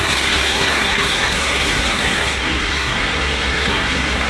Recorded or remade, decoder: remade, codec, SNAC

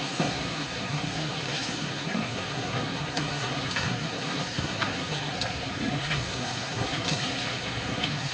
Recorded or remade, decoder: remade, codec, SNAC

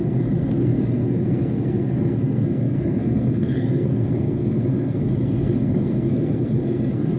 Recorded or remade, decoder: remade, codec, SNAC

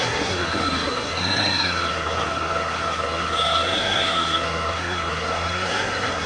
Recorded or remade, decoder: remade, codec, SNAC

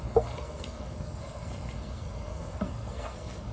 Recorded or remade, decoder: remade, codec, SNAC